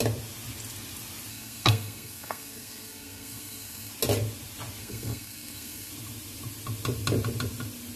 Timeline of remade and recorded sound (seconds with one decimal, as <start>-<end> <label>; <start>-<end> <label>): 0.0-1.3 recorded; 1.3-3.9 remade; 3.9-4.8 recorded; 4.8-5.9 remade; 5.9-8.0 recorded